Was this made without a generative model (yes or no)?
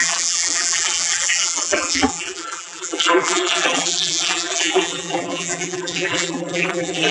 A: no